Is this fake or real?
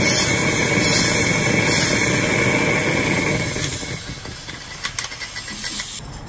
real